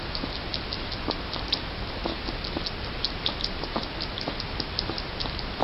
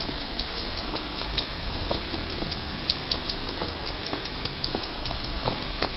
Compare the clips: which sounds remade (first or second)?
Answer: second